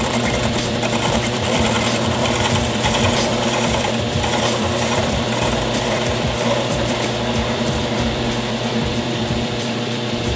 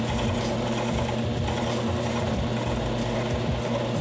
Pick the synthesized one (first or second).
first